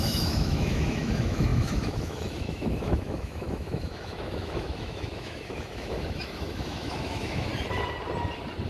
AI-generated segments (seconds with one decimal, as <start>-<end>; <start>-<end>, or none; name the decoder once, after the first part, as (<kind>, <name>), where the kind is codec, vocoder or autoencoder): 0.0-7.5 (autoencoder, DAC-VAE)